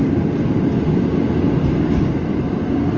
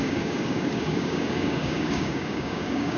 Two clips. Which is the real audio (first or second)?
first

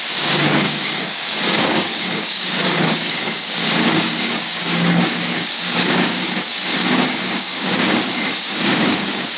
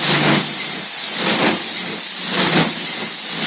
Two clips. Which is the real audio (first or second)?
second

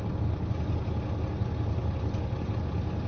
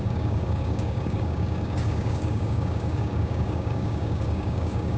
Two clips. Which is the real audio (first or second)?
first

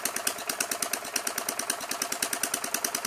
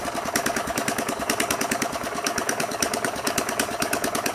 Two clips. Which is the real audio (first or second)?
first